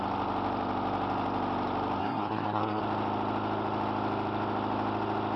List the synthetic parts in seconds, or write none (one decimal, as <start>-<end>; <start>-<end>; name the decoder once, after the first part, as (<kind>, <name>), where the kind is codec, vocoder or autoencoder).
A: 2.0-2.8 (codec, SNAC)